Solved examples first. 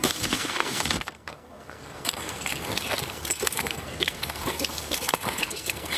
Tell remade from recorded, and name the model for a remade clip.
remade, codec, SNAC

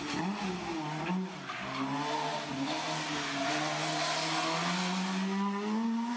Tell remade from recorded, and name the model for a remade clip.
recorded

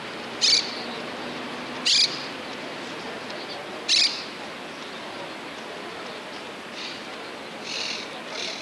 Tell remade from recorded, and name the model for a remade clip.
recorded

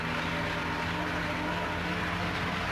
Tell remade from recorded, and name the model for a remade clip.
recorded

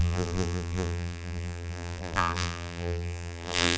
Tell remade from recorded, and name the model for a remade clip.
remade, vocoder, BigVGAN v2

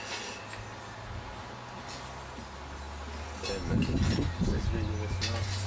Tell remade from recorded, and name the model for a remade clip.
recorded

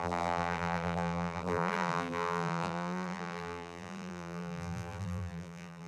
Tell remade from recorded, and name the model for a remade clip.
remade, vocoder, BigVGAN v2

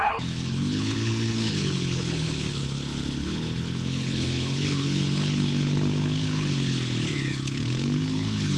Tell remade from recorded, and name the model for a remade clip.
remade, codec, HILCodec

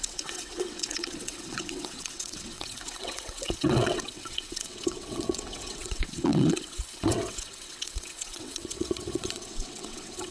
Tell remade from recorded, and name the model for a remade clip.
remade, vocoder, WaveNeXt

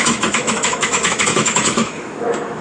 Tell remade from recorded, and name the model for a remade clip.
remade, autoencoder, DAC-VAE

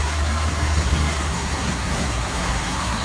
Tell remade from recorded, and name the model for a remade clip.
remade, codec, SNAC